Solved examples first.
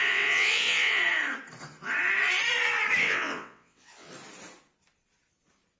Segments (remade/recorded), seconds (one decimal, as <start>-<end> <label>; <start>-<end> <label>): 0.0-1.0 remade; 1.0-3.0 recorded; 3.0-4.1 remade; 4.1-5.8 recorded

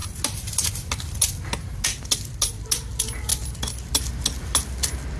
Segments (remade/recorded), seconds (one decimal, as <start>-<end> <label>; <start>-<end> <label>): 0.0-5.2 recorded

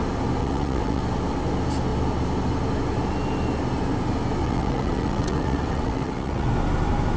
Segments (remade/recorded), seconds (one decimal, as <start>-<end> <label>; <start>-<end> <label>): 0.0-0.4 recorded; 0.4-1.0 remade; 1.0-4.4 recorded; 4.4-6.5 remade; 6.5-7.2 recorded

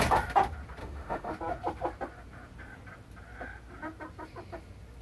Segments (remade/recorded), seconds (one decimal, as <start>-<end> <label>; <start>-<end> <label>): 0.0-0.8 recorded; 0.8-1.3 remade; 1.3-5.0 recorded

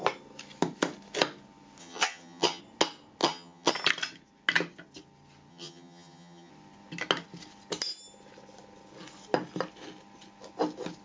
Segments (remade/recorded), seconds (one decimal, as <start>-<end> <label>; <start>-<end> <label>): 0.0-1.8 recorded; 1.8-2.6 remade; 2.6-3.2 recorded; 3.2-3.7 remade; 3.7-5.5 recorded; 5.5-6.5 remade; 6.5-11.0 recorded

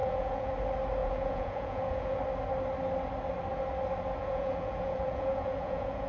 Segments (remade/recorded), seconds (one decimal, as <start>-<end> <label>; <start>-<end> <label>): 0.0-0.5 remade; 0.5-1.0 recorded; 1.0-2.2 remade; 2.2-4.2 recorded; 4.2-6.1 remade